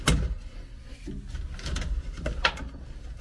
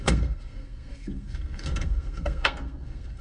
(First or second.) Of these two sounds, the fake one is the second